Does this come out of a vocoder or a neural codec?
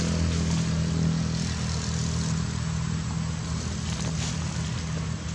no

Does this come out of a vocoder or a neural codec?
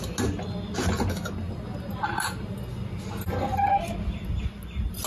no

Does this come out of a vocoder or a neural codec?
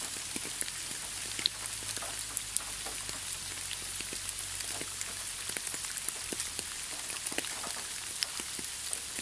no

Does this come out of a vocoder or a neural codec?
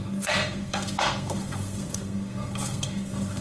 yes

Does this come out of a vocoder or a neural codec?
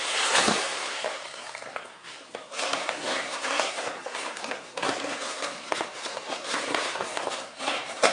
yes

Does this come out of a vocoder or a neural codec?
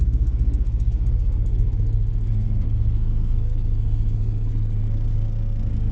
yes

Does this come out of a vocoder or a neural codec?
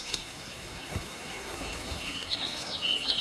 yes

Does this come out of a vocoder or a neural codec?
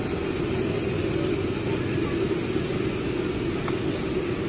no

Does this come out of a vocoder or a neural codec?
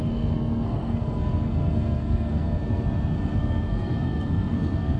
yes